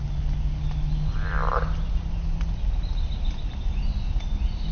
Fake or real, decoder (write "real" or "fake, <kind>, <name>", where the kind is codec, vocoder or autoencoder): real